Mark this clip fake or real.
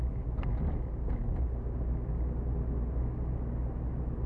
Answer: real